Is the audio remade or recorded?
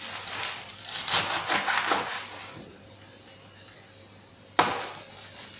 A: recorded